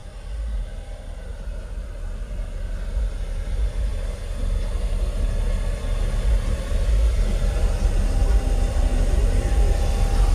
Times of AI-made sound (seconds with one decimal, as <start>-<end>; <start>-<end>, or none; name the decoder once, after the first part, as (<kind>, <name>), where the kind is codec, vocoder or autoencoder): none